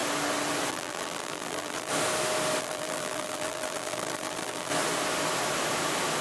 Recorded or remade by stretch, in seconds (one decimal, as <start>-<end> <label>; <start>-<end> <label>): 0.0-0.7 recorded; 0.7-1.9 remade; 1.9-2.6 recorded; 2.6-4.7 remade; 4.7-6.2 recorded